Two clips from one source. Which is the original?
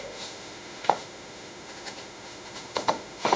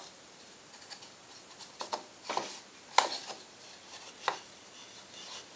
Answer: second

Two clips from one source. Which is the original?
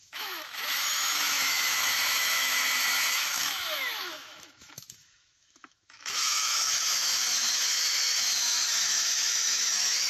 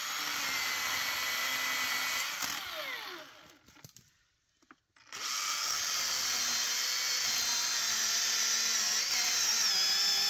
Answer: second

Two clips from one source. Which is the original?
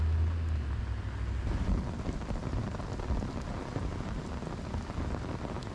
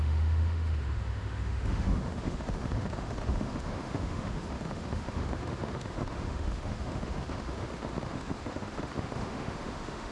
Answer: first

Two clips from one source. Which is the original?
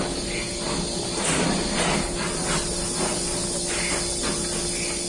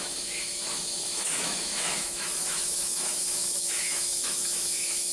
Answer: first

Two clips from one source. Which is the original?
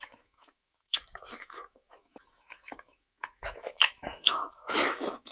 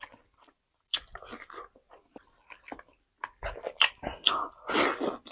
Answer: second